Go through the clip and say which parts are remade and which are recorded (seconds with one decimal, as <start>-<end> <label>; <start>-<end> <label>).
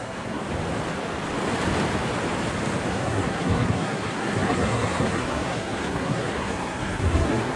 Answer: 0.0-0.4 remade; 0.4-2.9 recorded; 2.9-7.6 remade